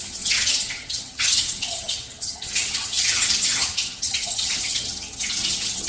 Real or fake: fake